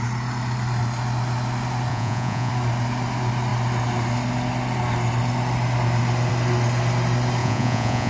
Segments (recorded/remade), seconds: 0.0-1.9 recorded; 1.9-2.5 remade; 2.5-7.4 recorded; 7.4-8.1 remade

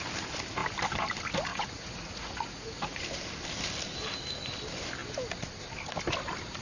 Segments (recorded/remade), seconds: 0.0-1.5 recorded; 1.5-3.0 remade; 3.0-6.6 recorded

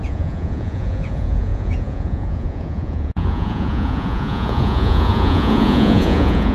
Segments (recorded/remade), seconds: 0.0-6.5 remade